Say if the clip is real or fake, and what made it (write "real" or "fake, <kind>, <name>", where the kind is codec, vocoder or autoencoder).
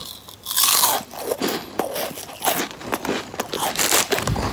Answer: real